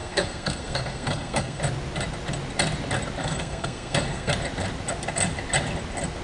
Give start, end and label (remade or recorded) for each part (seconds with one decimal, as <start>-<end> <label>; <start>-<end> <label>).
0.0-1.6 remade; 1.6-3.2 recorded; 3.2-4.3 remade; 4.3-6.2 recorded